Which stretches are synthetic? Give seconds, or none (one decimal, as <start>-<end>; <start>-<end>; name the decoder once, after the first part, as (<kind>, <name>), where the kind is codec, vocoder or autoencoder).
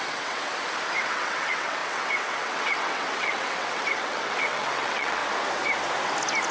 0.0-0.5 (vocoder, WaveNeXt); 1.0-5.2